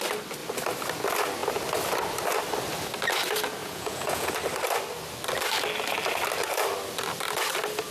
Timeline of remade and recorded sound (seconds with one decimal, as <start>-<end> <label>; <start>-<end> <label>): 0.0-3.6 recorded; 3.6-4.3 remade; 4.3-7.9 recorded